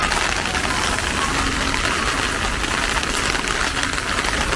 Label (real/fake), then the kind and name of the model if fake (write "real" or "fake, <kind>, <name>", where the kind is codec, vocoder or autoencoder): real